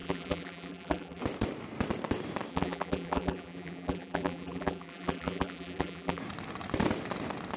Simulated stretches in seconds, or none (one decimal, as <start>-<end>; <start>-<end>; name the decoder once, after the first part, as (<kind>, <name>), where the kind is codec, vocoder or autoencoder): 0.0-1.2 (vocoder, BigVGAN v2); 2.5-6.2